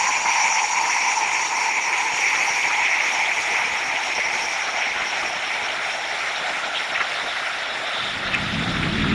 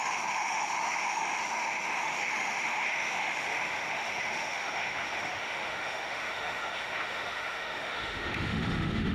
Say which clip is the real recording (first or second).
first